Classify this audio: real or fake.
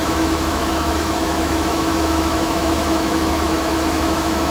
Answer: fake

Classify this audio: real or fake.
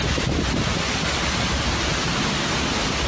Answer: real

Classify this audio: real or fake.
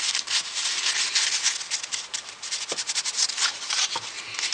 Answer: real